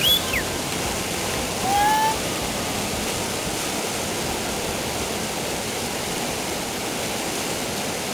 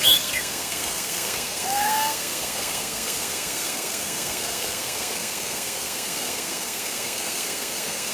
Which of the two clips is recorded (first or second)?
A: first